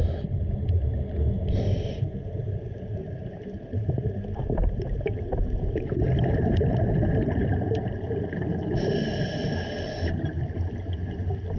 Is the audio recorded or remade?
recorded